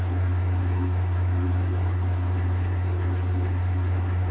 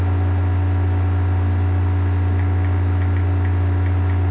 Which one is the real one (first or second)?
second